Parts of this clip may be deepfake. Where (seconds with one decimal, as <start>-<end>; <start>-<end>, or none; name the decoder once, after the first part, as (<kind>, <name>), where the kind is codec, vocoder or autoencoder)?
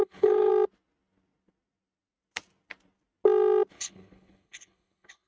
0.0-0.5 (codec, HILCodec); 3.7-5.3